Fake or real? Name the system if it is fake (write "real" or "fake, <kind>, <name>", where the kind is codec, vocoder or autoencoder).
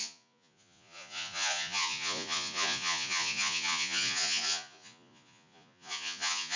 fake, vocoder, Vocos